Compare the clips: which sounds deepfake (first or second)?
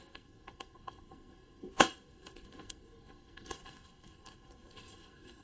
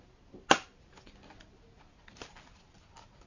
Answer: first